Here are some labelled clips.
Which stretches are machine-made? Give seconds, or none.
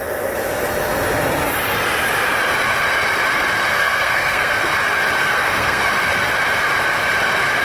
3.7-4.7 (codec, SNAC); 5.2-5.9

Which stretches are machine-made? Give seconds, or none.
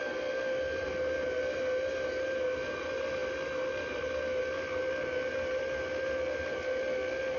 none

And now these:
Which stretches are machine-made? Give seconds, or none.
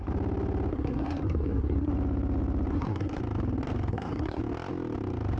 0.7-1.9 (codec, SNAC); 2.7-3.2; 3.9-4.4